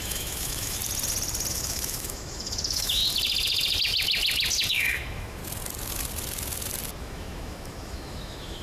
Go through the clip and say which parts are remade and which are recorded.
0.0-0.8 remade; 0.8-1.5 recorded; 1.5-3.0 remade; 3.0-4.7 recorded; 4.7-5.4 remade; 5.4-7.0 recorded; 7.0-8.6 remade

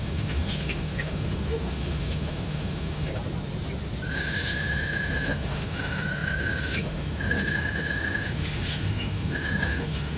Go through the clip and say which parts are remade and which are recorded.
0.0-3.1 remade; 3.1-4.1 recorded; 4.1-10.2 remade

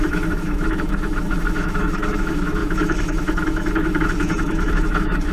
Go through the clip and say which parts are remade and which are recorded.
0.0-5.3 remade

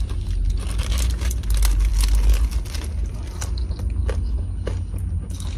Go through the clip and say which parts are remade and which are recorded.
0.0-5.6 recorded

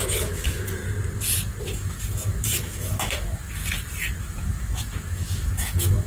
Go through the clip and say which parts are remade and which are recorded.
0.0-0.8 remade; 0.8-1.6 recorded; 1.6-3.6 remade; 3.6-4.2 recorded; 4.2-6.1 remade

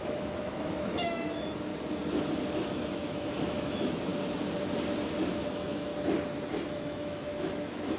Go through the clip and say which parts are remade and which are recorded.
0.0-1.7 remade; 1.7-2.7 recorded; 2.7-4.1 remade; 4.1-5.5 recorded; 5.5-5.9 remade; 5.9-6.7 recorded; 6.7-8.0 remade